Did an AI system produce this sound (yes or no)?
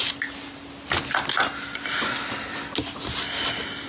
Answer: no